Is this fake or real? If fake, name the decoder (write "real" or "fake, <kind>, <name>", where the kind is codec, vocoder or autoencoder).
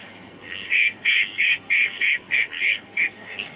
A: fake, codec, SNAC